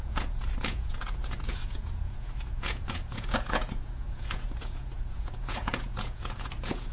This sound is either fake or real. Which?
fake